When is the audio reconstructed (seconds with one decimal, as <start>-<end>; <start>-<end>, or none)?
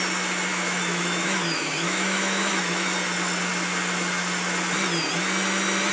0.5-2.9